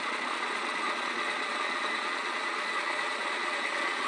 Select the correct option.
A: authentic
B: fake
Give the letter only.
B